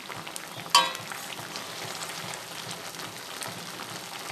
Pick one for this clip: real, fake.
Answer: real